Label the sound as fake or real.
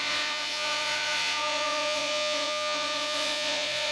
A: fake